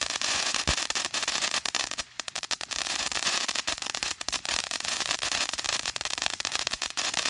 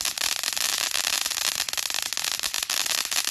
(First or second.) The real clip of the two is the second